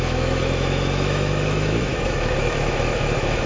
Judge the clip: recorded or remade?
remade